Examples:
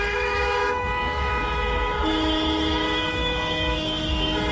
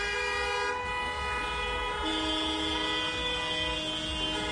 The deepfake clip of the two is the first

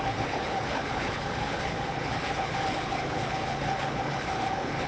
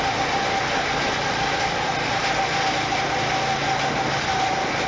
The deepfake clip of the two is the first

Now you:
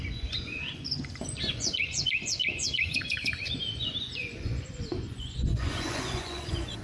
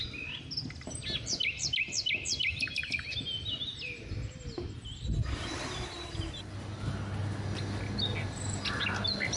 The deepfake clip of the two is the first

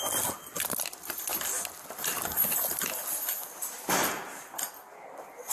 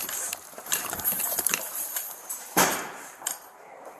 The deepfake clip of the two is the second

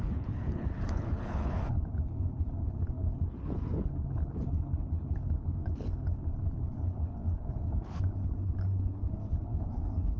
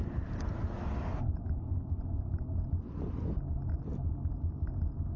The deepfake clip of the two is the first